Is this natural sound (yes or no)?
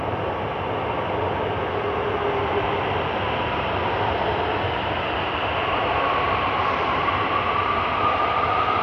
yes